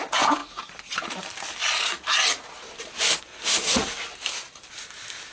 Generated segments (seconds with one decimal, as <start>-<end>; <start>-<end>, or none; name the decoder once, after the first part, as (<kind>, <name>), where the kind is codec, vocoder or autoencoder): 1.6-4.7 (vocoder, BigVGAN v2)